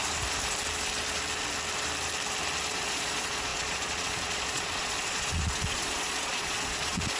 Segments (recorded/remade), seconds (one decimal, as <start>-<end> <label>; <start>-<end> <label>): 0.0-2.7 recorded; 2.7-7.2 remade